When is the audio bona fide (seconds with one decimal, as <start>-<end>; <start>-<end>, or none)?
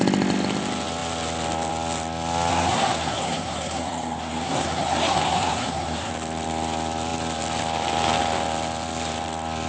0.0-2.5; 6.1-9.7